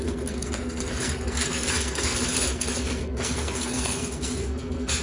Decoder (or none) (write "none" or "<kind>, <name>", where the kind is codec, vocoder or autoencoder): codec, SNAC